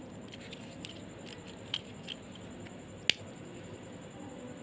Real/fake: real